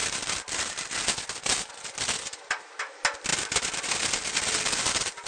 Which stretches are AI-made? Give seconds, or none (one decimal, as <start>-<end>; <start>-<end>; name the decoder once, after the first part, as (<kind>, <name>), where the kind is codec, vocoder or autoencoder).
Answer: none